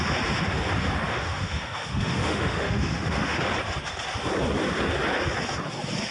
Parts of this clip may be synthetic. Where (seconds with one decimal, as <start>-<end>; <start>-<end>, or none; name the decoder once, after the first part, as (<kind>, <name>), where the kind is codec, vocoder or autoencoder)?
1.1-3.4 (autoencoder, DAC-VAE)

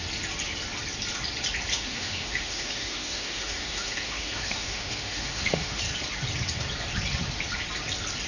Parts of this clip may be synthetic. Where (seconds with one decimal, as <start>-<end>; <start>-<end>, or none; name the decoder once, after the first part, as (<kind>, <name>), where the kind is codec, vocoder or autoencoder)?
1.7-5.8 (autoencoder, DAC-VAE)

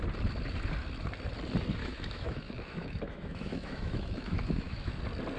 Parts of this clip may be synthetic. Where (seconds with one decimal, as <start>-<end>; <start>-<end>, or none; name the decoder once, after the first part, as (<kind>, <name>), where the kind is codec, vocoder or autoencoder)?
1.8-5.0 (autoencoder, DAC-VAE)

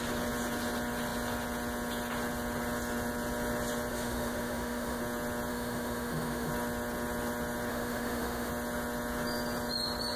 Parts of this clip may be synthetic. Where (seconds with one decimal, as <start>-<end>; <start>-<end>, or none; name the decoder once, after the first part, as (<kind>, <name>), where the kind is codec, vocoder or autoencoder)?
3.9-5.0 (autoencoder, DAC-VAE); 5.5-6.5; 7.7-8.5

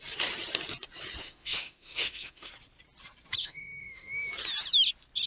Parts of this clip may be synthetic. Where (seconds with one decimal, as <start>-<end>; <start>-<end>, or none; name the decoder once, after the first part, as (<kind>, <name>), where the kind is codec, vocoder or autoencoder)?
1.2-2.5 (autoencoder, DAC-VAE); 3.4-4.3

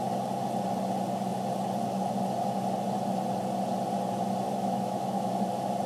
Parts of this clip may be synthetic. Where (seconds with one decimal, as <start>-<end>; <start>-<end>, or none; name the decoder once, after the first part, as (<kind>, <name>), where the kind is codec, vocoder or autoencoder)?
4.5-5.3 (autoencoder, DAC-VAE)

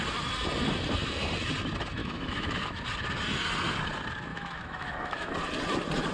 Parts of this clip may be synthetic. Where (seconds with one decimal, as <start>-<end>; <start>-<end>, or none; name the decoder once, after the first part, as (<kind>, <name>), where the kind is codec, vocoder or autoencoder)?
2.0-2.8 (autoencoder, DAC-VAE); 4.3-5.3

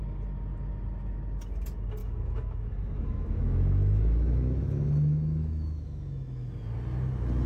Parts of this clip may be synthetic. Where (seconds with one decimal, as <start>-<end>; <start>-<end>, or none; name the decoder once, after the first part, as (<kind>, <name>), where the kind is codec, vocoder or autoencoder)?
2.0-6.5 (autoencoder, DAC-VAE)